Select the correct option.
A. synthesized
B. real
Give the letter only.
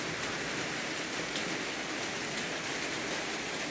B